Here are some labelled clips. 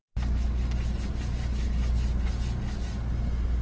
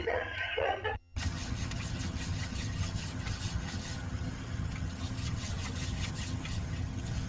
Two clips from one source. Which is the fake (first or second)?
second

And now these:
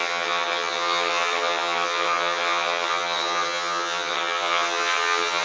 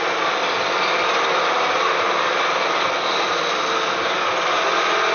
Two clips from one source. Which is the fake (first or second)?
first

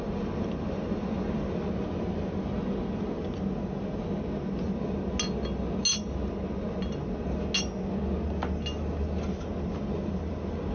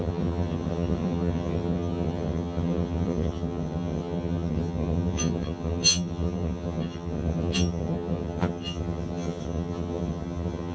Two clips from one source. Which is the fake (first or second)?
second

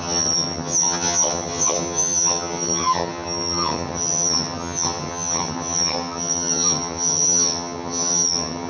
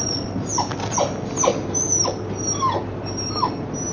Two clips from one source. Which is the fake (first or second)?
first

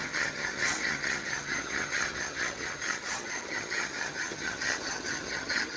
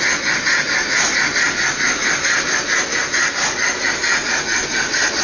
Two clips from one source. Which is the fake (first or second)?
first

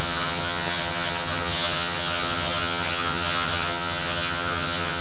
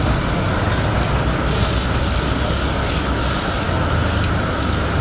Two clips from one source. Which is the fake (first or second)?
first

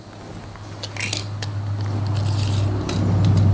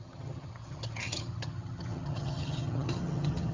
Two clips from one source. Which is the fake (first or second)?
second